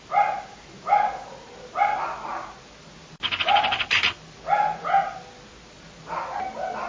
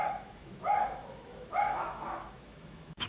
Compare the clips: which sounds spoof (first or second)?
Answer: second